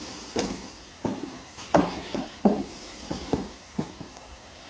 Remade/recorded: remade